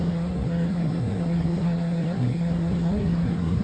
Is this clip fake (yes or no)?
yes